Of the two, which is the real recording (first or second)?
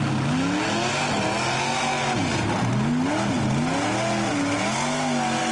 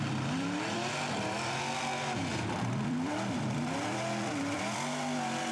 first